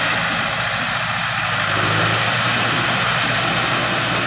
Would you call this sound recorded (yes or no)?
yes